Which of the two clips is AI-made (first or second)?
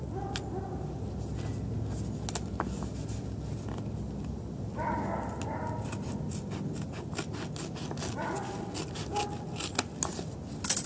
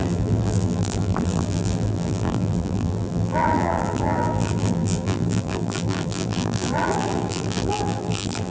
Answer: second